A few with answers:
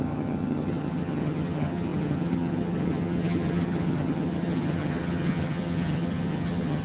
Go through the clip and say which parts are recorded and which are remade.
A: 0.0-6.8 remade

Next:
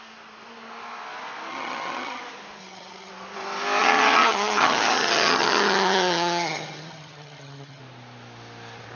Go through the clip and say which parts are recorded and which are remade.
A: 0.0-1.5 recorded; 1.5-2.2 remade; 2.2-2.6 recorded; 2.6-3.1 remade; 3.1-3.8 recorded; 3.8-7.8 remade; 7.8-9.0 recorded

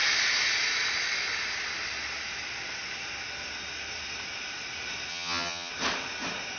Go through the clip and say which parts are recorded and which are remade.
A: 0.0-5.1 recorded; 5.1-5.7 remade; 5.7-6.6 recorded